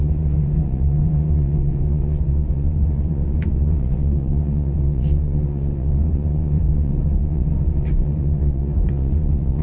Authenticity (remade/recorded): remade